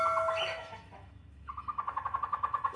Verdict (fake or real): fake